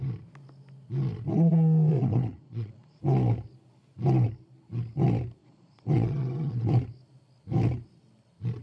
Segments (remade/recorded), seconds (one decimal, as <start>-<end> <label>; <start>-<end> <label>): 0.0-1.9 recorded; 1.9-3.0 remade; 3.0-5.4 recorded; 5.4-6.7 remade; 6.7-8.6 recorded